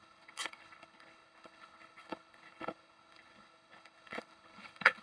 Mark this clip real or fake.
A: fake